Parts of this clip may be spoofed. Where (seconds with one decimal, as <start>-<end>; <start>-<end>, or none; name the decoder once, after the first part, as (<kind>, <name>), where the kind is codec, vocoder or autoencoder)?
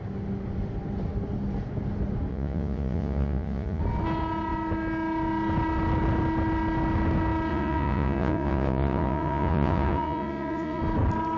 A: 2.3-3.8 (vocoder, Vocos); 7.5-10.8